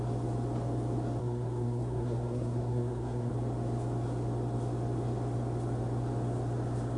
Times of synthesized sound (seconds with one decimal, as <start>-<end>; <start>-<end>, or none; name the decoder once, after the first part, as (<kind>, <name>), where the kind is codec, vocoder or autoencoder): 1.2-3.3 (codec, SNAC)